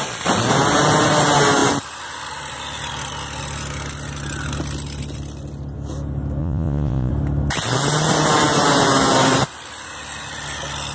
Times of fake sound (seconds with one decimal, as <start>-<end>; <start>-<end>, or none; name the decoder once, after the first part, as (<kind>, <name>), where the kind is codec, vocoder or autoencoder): 6.4-7.1 (vocoder, Vocos)